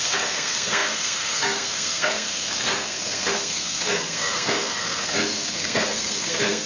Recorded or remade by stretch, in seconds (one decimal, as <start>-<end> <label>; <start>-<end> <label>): 0.0-6.7 remade